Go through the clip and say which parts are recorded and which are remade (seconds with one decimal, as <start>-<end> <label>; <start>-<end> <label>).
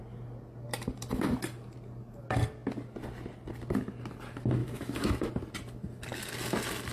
0.0-4.6 recorded; 4.6-5.3 remade; 5.3-6.9 recorded